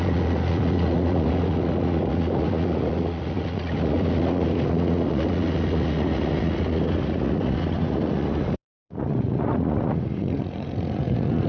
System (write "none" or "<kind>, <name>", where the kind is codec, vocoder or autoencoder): vocoder, Vocos